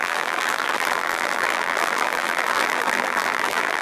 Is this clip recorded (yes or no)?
no